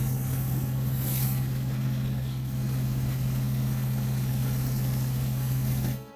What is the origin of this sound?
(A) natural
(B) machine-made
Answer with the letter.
B